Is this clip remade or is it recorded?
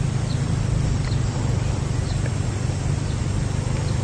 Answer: remade